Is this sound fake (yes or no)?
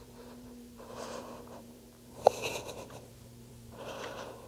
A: yes